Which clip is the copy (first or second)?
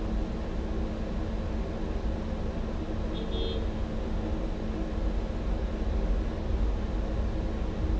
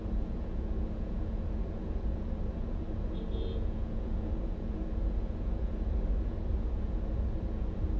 second